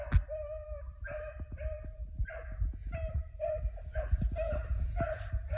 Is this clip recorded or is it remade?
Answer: recorded